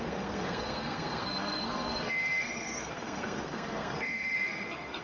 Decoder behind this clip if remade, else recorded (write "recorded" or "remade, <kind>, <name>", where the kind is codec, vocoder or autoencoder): remade, codec, SNAC